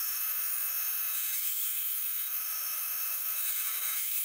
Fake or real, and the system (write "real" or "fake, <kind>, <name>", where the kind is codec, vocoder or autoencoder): fake, autoencoder, DAC-VAE